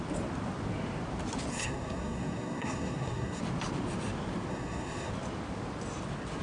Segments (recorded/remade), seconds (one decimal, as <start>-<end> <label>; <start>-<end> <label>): 0.0-1.5 recorded; 1.5-3.4 remade; 3.4-4.5 recorded; 4.5-5.1 remade; 5.1-6.4 recorded